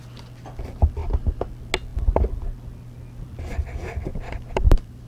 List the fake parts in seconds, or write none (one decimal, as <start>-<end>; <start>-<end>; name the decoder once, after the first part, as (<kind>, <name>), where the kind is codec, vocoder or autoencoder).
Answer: 1.0-1.5 (vocoder, BigVGAN v2); 4.1-5.1